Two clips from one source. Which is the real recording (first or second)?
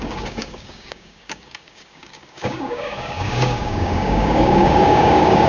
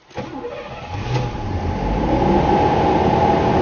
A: second